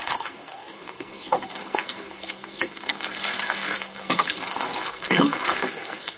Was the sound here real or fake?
fake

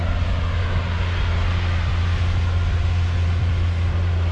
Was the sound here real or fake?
real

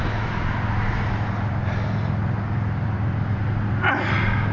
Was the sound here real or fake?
real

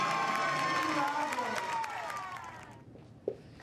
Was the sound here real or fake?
real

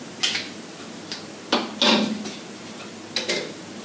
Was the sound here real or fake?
real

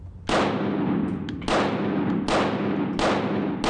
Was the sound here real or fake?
real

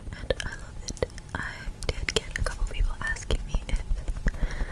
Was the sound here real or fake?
real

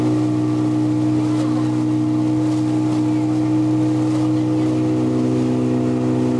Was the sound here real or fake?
real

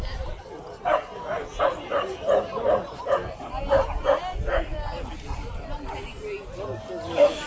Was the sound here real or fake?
real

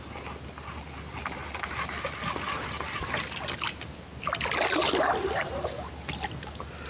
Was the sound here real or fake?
real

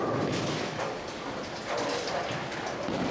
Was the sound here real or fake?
real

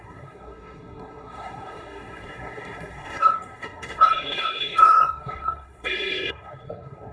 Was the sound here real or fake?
fake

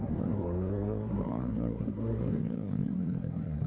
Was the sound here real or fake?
fake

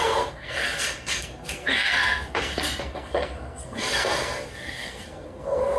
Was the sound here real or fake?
fake